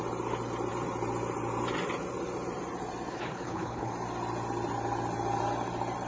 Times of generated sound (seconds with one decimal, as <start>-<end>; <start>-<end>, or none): 3.1-3.9